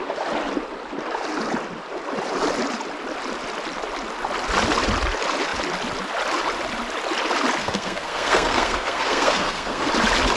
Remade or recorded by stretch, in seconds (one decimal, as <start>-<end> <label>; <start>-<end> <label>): 0.0-7.6 recorded; 7.6-9.9 remade; 9.9-10.4 recorded